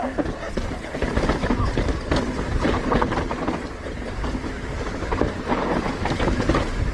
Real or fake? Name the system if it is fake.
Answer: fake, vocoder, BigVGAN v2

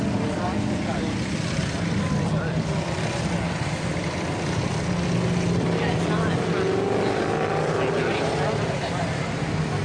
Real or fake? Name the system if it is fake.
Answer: real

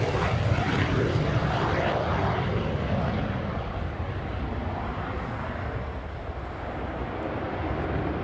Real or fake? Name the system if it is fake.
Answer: fake, vocoder, BigVGAN v2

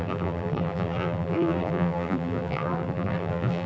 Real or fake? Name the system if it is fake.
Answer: fake, vocoder, BigVGAN v2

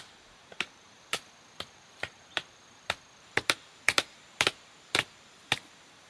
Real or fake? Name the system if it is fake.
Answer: fake, vocoder, BigVGAN v2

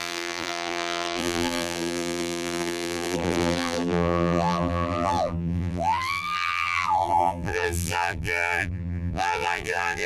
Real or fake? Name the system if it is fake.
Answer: fake, vocoder, BigVGAN v2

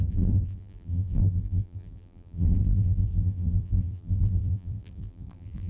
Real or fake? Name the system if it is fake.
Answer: fake, vocoder, BigVGAN v2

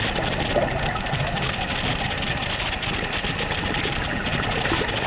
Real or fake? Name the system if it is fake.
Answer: real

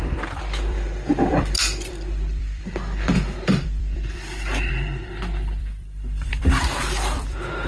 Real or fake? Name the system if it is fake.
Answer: fake, vocoder, BigVGAN v2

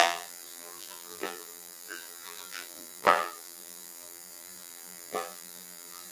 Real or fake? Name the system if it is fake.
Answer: fake, vocoder, BigVGAN v2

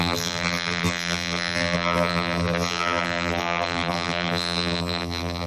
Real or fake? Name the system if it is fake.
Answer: fake, vocoder, BigVGAN v2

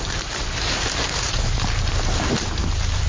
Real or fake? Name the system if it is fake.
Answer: fake, vocoder, BigVGAN v2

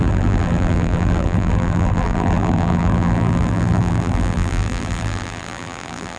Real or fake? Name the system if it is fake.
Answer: fake, vocoder, BigVGAN v2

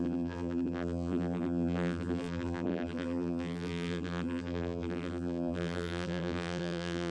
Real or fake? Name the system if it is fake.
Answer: fake, vocoder, BigVGAN v2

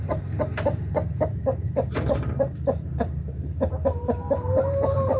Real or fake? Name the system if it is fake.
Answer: fake, vocoder, BigVGAN v2